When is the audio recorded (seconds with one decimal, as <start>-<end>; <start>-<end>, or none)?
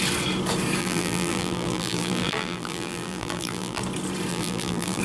0.0-0.8; 3.8-4.3